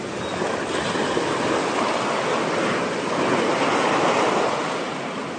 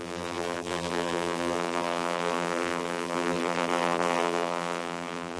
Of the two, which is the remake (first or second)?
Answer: second